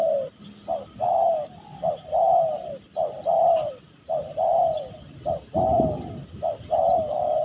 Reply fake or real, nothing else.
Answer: real